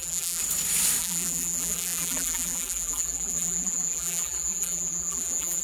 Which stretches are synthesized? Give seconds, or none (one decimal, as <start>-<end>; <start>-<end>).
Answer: 0.0-0.4; 1.0-5.6